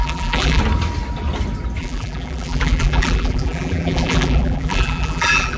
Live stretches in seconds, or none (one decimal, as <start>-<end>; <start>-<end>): 0.6-1.8